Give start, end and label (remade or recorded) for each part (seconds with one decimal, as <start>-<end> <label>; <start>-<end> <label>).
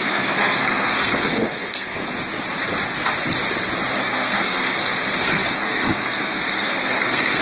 0.0-2.0 remade; 2.0-4.0 recorded; 4.0-7.4 remade